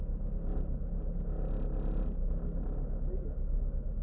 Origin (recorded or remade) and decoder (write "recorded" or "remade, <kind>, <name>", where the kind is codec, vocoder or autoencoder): recorded